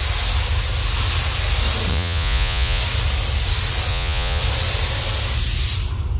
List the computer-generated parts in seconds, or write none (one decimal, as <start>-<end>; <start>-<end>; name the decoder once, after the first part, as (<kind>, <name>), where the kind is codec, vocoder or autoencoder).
1.9-2.8 (vocoder, Vocos); 3.9-4.4